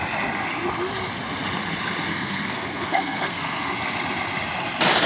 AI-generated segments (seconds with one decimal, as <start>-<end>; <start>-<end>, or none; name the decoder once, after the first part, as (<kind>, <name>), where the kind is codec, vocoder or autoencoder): 2.1-3.7 (codec, SNAC)